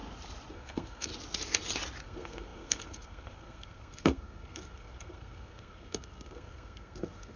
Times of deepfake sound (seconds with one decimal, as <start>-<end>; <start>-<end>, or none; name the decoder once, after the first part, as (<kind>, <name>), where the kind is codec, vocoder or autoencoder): 0.5-1.1 (codec, SNAC); 2.0-7.4